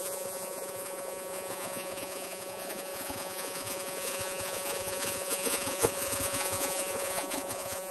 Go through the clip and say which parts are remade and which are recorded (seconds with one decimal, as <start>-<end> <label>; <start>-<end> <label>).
0.0-7.9 remade